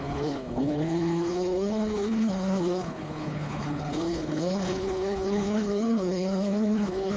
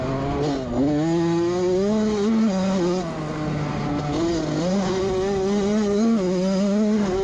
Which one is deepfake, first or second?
first